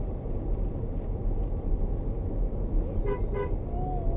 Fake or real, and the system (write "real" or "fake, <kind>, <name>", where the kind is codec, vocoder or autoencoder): real